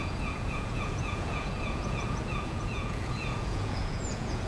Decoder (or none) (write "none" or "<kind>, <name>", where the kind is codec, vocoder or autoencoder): vocoder, Vocos